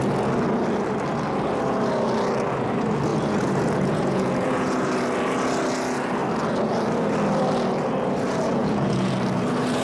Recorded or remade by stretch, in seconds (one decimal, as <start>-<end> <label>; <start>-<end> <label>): 0.0-3.1 recorded; 3.1-4.9 remade; 4.9-8.6 recorded; 8.6-9.1 remade; 9.1-9.8 recorded